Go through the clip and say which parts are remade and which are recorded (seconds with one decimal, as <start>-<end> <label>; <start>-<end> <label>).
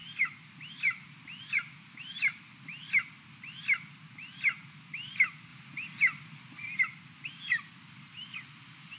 0.0-9.0 recorded